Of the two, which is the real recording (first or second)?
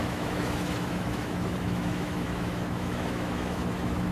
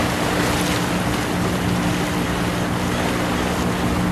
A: second